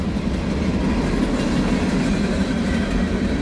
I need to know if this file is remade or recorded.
recorded